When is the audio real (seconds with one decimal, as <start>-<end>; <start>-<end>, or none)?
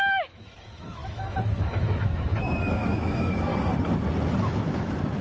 3.5-4.3